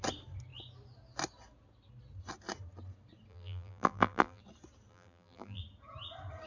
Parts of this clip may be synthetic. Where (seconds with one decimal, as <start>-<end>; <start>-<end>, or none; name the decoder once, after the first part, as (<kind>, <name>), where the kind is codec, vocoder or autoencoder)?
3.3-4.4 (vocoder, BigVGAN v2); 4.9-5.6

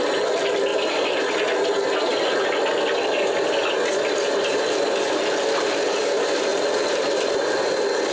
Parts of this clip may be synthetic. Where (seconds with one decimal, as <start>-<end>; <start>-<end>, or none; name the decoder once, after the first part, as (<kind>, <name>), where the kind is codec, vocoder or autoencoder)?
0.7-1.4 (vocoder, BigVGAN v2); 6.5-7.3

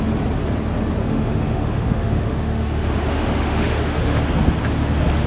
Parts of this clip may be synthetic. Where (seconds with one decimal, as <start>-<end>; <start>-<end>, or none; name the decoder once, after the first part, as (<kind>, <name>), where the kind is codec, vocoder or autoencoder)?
1.0-4.2 (autoencoder, DAC-VAE)

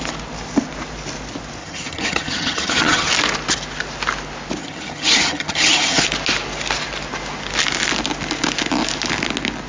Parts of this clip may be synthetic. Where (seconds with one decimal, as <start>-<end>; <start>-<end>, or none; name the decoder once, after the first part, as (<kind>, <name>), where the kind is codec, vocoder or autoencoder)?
1.6-3.1 (vocoder, HiFi-GAN); 4.6-6.0